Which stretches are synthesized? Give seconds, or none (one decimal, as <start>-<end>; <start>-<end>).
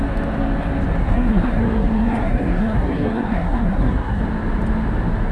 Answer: 1.0-4.2